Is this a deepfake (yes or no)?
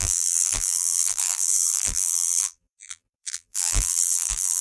yes